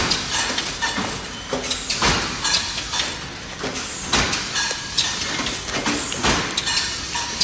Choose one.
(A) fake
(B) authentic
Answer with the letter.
B